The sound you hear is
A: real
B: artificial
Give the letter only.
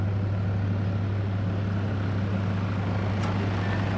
A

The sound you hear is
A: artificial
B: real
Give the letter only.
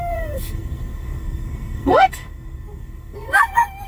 A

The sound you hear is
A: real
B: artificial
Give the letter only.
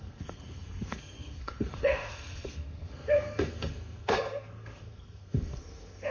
B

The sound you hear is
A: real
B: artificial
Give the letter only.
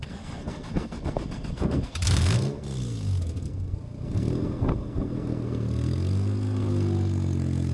B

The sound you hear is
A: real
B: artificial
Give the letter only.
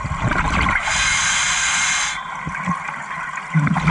A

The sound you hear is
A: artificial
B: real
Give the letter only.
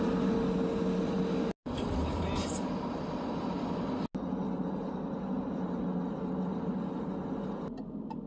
B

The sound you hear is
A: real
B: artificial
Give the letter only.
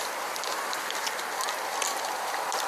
A